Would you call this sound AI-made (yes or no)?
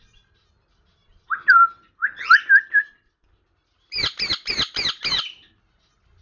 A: yes